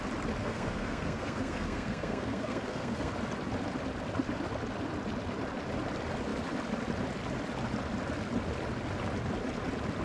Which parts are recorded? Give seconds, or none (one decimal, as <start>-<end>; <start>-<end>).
0.0-0.4; 3.1-10.0